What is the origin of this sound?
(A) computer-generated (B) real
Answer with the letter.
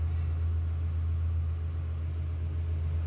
B